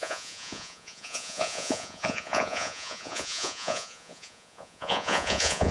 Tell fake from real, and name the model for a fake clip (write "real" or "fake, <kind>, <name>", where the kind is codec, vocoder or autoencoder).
fake, vocoder, Vocos